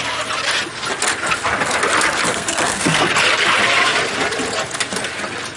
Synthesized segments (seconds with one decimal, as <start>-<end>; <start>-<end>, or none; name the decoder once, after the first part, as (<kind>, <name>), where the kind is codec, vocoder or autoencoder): 2.3-3.1 (codec, SNAC)